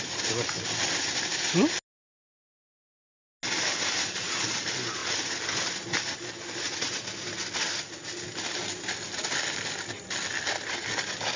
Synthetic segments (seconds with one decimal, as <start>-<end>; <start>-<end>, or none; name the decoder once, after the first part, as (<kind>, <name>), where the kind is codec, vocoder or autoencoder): none